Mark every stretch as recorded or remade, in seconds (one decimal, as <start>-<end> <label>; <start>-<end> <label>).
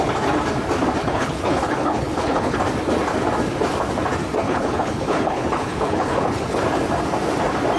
0.0-1.0 recorded; 1.0-2.6 remade; 2.6-4.4 recorded; 4.4-6.6 remade; 6.6-7.8 recorded